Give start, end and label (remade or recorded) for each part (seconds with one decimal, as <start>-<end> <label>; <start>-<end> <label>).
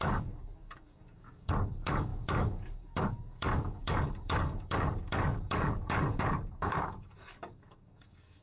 0.0-8.4 remade